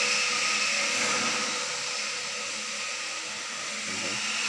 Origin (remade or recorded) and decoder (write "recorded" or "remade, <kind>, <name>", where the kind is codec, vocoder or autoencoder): recorded